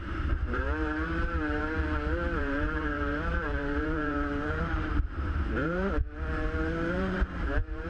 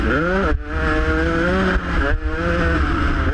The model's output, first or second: first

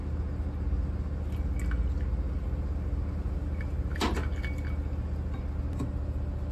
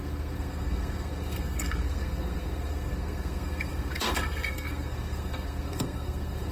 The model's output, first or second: second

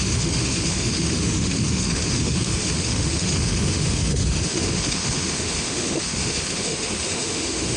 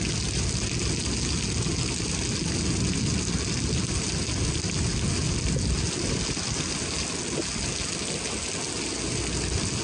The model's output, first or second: first